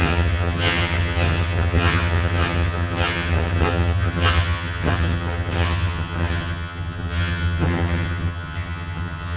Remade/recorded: remade